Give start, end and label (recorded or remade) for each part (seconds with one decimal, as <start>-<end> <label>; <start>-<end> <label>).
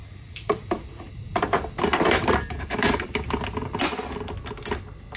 0.0-3.1 remade; 3.1-5.2 recorded